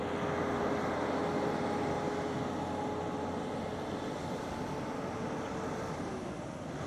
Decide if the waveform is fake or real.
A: real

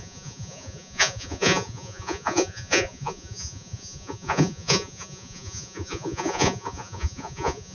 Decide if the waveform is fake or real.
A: fake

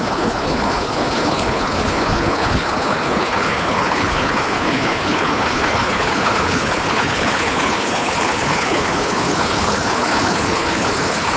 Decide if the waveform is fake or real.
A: fake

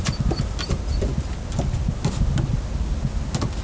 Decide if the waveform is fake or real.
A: real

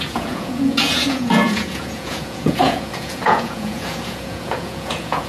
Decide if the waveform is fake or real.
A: fake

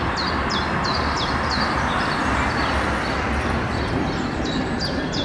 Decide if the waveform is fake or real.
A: real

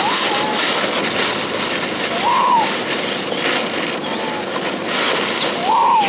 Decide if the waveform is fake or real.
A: real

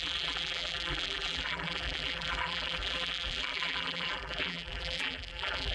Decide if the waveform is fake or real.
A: fake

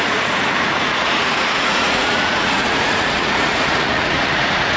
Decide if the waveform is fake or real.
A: fake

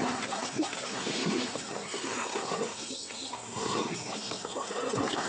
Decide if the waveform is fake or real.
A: fake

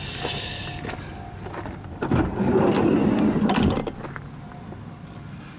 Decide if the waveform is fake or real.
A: real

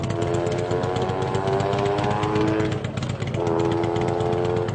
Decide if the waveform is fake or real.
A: real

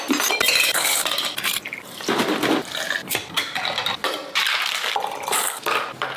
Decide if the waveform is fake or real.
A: real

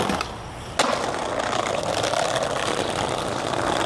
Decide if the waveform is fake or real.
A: real